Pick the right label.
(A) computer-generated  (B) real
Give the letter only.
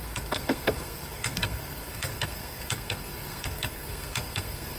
A